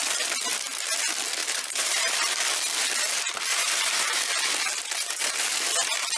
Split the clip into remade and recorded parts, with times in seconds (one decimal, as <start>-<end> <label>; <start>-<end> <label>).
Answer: 0.0-1.4 recorded; 1.4-2.2 remade; 2.2-3.5 recorded; 3.5-4.2 remade; 4.2-4.8 recorded; 4.8-5.3 remade; 5.3-6.2 recorded